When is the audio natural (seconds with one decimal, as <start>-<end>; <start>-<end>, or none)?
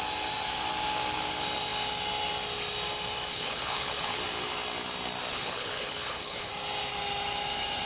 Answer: 0.0-3.3; 4.2-5.3; 6.5-7.9